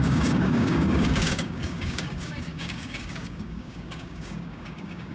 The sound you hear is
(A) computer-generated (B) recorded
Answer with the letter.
A